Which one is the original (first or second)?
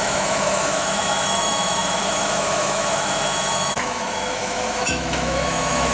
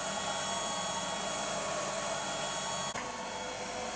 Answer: second